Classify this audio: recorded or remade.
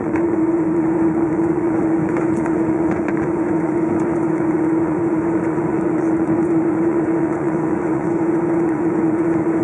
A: remade